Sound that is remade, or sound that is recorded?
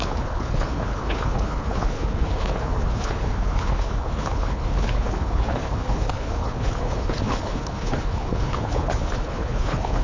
remade